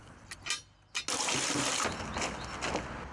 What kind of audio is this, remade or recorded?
recorded